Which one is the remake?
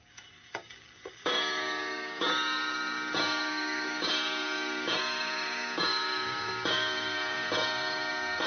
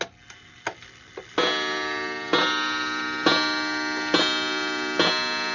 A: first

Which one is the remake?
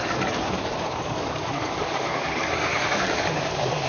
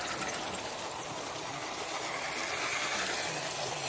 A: first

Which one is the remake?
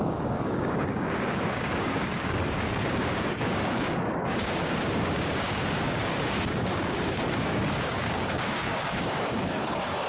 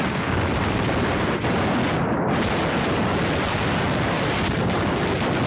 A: first